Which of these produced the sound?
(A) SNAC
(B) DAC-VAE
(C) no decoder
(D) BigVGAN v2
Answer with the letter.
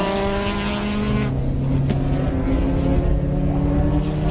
C